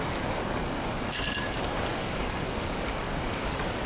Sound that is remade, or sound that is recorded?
remade